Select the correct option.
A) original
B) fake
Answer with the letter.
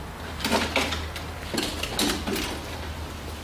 A